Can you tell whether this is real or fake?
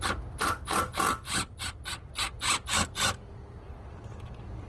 real